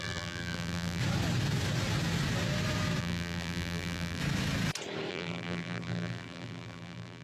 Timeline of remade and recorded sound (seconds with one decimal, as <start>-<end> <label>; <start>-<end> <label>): 0.0-1.0 remade; 1.0-3.0 recorded; 3.0-4.2 remade; 4.2-5.1 recorded; 5.1-7.2 remade